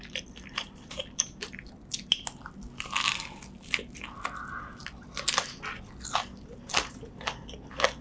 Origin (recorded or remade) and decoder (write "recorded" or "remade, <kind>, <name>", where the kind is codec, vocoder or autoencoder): recorded